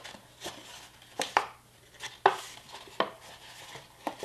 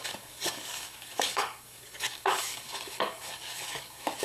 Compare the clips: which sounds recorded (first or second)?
first